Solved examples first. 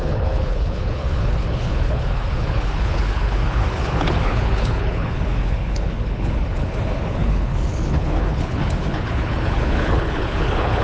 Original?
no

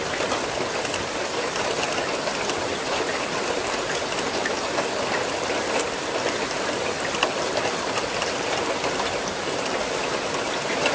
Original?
yes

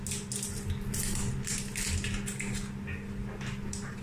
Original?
yes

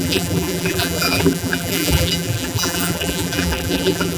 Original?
no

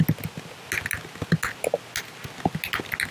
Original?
yes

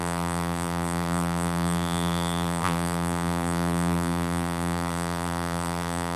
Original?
no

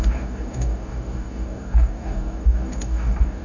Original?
no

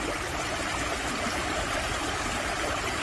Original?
no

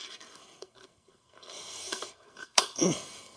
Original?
no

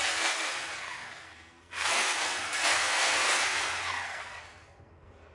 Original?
no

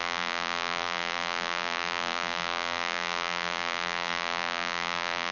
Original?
no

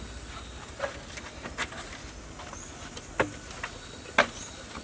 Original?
yes